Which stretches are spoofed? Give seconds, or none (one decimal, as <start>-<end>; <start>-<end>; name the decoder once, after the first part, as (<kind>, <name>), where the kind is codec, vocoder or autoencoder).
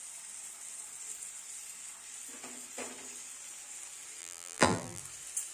4.2-5.0 (vocoder, BigVGAN v2)